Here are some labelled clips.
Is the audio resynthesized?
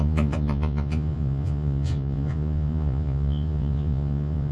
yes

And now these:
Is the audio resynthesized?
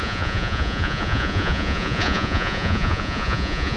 yes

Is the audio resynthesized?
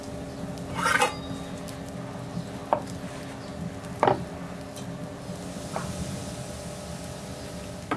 no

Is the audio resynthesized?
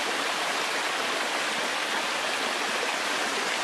no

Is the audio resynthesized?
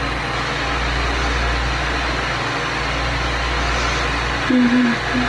no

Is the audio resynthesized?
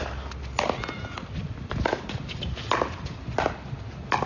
no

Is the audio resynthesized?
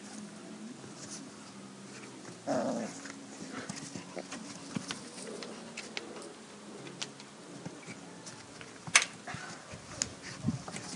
no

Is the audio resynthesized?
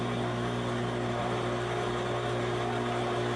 no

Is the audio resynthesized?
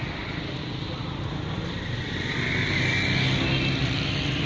no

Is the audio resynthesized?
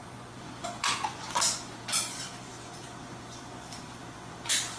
yes